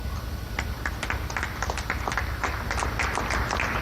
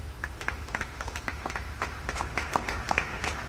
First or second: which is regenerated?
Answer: second